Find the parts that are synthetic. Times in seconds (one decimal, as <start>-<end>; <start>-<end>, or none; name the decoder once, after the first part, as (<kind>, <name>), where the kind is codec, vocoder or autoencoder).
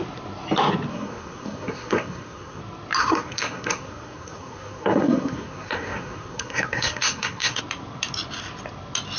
0.9-2.6 (codec, SNAC); 3.0-7.6